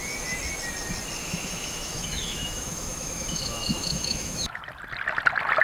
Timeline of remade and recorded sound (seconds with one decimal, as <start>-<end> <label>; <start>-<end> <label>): 0.0-1.2 recorded; 1.2-4.6 remade; 4.6-5.6 recorded

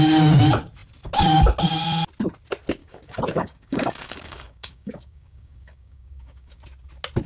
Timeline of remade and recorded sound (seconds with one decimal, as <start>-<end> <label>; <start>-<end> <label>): 0.0-2.8 recorded; 2.8-6.6 remade; 6.6-7.3 recorded

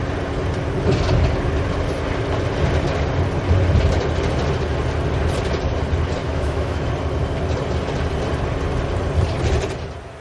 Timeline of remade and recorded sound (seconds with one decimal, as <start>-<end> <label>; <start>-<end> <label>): 0.0-6.2 recorded; 6.2-6.9 remade; 6.9-10.2 recorded

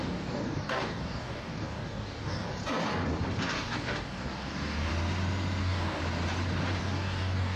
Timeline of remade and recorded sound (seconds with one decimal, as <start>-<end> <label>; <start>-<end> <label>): 0.0-2.6 remade; 2.6-3.4 recorded; 3.4-4.9 remade; 4.9-5.6 recorded; 5.6-6.0 remade; 6.0-6.8 recorded; 6.8-7.6 remade

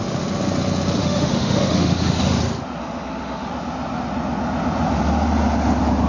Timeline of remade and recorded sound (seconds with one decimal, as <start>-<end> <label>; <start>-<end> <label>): 0.0-1.0 recorded; 1.0-2.4 remade; 2.4-2.8 recorded; 2.8-3.5 remade; 3.5-6.1 recorded